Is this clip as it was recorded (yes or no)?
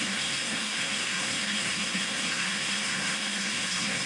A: no